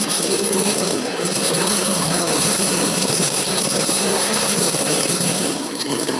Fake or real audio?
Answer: fake